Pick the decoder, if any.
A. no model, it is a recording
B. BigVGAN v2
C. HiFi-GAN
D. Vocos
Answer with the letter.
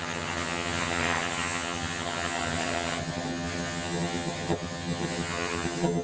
C